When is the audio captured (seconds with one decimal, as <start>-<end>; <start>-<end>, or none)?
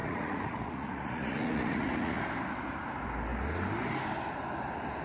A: 2.2-5.0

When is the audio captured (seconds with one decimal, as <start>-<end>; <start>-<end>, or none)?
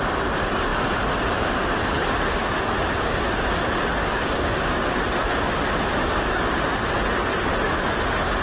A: 0.0-4.0; 5.0-6.0; 6.6-8.4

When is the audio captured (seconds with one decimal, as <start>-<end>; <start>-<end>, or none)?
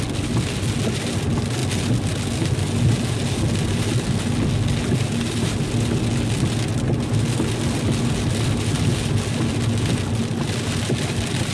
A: 0.0-11.5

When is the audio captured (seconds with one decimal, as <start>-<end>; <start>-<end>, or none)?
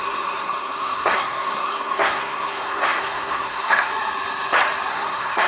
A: 3.9-4.9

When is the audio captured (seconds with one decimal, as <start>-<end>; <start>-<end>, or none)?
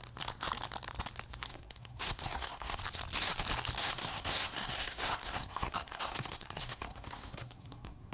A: 0.0-1.5; 2.8-3.8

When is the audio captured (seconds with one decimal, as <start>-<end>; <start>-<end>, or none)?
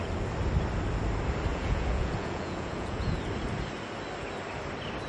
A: 0.0-1.5; 3.2-5.1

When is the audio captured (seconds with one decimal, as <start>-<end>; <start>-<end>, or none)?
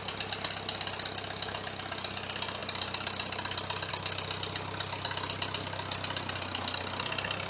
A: 0.0-7.5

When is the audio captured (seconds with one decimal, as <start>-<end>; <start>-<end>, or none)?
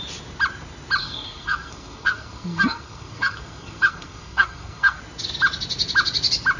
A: 0.0-1.0; 5.0-6.6